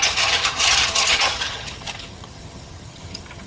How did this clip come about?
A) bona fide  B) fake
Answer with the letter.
B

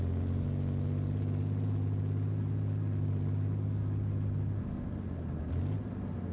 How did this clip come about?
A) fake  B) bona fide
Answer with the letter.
B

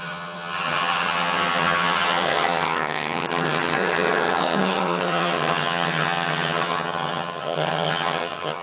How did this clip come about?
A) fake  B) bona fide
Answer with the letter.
A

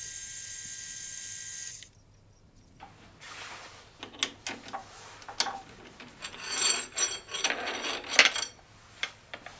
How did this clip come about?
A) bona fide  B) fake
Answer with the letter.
A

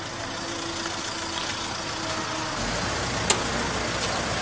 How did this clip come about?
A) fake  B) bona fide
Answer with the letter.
B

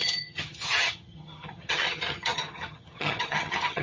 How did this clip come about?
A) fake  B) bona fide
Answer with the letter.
A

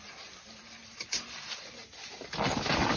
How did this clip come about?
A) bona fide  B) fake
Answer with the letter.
A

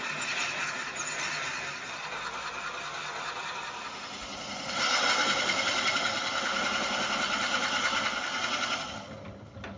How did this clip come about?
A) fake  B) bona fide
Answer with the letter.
B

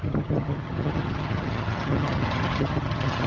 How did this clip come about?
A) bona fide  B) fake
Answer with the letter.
B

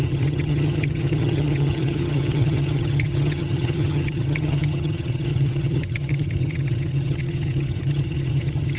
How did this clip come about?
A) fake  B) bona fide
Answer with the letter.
A